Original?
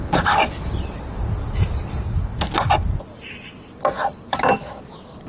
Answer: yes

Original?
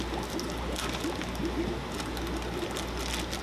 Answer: yes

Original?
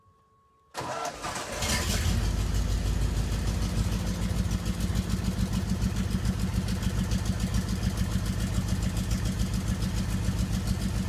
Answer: yes